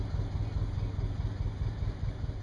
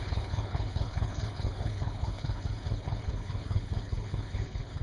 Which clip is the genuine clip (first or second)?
first